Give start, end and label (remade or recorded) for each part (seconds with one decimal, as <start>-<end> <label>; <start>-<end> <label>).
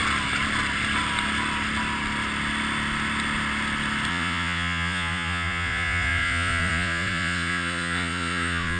0.0-4.1 recorded; 4.1-8.8 remade